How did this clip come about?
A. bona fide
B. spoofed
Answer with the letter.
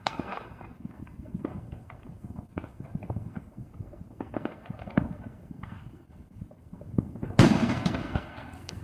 B